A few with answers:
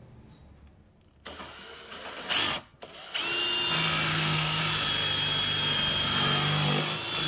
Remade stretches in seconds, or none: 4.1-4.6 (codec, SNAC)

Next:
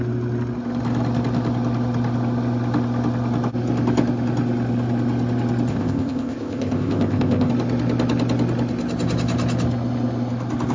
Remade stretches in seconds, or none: 5.7-7.5 (codec, ZipCodec)

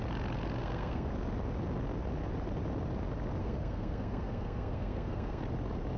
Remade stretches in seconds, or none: 0.6-1.1 (codec, SNAC); 3.4-5.4

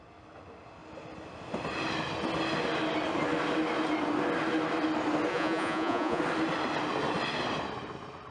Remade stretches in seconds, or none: 5.3-6.2 (vocoder, Vocos)

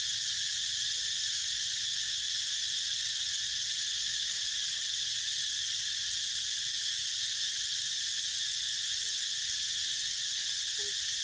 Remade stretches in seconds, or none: none

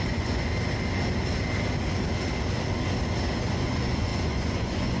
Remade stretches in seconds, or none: 0.0-0.5 (vocoder, Vocos); 3.4-5.0

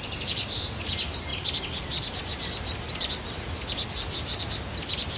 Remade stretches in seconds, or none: none

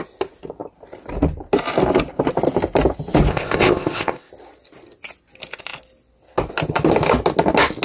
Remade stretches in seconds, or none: 3.3-4.3 (codec, ZipCodec)